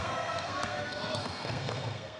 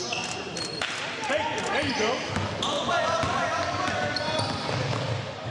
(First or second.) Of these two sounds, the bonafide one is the second